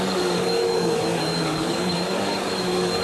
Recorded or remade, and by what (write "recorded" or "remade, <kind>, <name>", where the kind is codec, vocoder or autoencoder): remade, codec, DAC